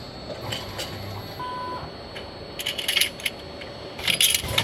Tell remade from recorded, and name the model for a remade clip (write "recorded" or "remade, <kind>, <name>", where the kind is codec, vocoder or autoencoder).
recorded